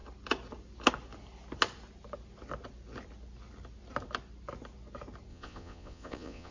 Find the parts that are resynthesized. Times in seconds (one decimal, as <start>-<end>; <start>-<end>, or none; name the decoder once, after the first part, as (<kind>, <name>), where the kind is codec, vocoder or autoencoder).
5.3-6.5 (vocoder, Vocos)